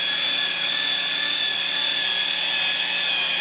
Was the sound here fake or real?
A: real